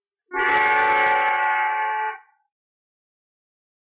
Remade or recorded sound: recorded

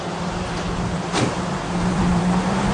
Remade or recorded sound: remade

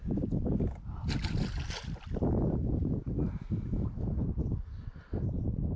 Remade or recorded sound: recorded